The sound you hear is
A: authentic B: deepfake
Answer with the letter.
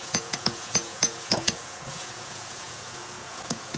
B